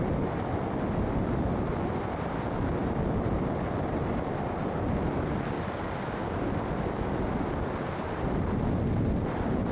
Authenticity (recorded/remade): recorded